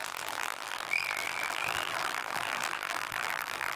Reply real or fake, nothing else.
fake